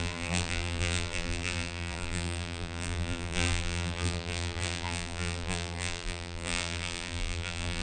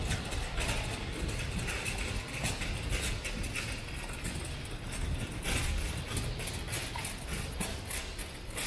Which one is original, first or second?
second